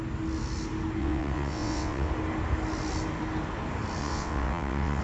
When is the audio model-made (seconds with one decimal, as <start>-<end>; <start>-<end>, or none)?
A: 1.0-2.1; 4.0-5.0